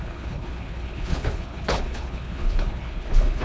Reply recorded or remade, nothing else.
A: remade